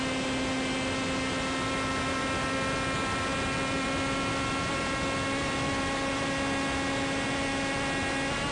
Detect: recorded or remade recorded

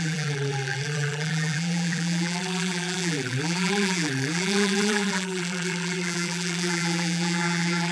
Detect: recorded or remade remade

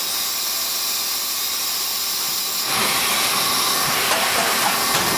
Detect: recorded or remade recorded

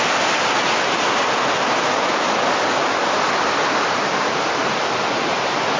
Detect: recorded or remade recorded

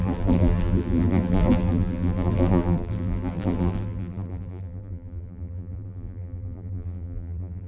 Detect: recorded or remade remade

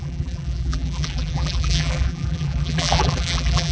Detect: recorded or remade remade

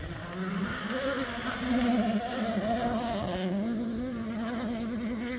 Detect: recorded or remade recorded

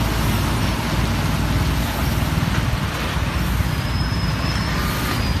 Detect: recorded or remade recorded